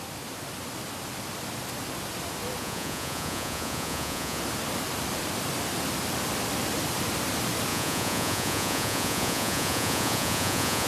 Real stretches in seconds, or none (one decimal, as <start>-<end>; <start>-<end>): 0.0-2.6; 4.4-7.7